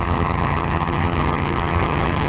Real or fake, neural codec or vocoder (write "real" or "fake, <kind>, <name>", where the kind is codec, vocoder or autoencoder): fake, vocoder, HiFi-GAN